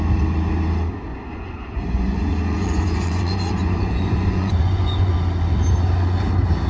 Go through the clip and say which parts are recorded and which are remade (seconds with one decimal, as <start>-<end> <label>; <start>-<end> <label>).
0.0-1.1 recorded; 1.1-5.1 remade; 5.1-6.7 recorded